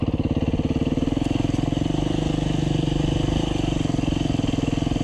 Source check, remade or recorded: recorded